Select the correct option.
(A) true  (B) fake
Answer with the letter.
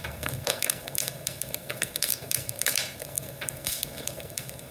B